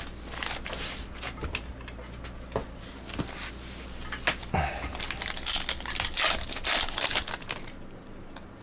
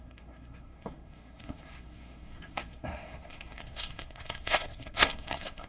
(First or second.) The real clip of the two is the first